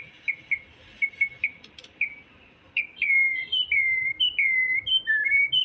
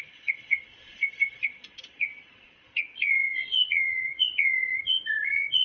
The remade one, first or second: second